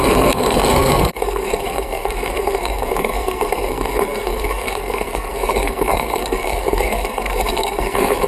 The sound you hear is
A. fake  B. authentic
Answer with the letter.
A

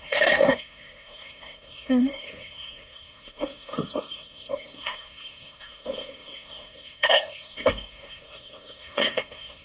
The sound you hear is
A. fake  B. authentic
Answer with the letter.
A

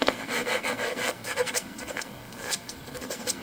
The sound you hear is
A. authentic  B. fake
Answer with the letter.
B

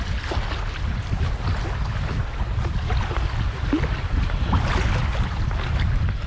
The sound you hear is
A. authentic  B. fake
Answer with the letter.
A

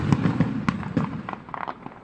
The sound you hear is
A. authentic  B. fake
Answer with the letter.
A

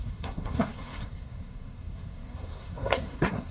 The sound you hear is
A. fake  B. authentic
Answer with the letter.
A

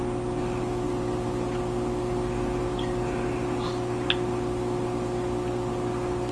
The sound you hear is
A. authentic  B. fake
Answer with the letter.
A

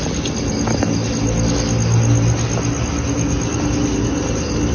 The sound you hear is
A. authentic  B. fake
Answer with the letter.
A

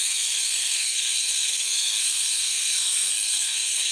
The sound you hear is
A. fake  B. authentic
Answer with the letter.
A